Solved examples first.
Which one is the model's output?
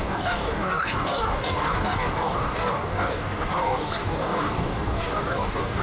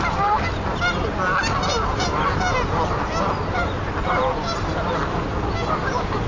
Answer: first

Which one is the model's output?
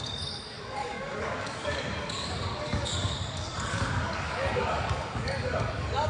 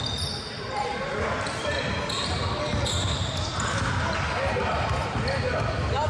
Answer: first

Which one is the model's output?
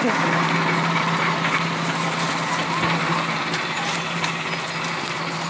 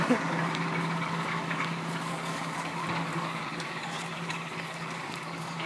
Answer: second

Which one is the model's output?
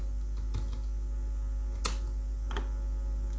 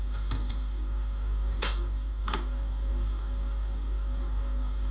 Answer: second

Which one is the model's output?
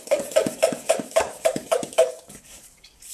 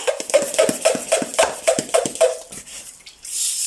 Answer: first